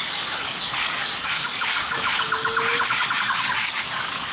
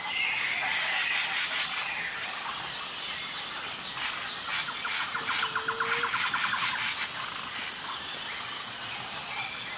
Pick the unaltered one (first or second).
second